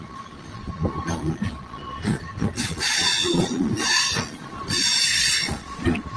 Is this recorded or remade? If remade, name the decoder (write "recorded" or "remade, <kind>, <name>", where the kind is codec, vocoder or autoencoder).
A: remade, vocoder, Vocos